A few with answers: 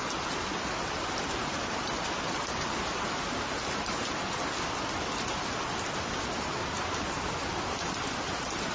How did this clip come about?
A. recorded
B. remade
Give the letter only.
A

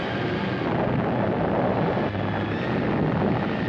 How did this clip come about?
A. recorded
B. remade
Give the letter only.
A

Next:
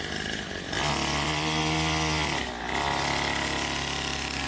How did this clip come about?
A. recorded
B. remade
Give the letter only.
A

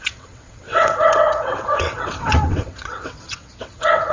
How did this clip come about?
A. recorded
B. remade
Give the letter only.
B